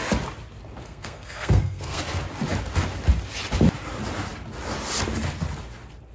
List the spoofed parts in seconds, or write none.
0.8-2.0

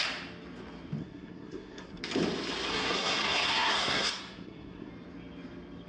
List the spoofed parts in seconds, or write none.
1.0-2.0; 2.7-4.9

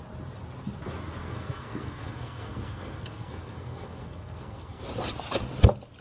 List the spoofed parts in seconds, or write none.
1.2-4.8

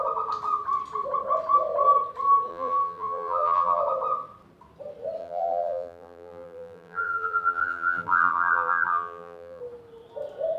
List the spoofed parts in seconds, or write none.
2.5-3.8; 5.2-9.6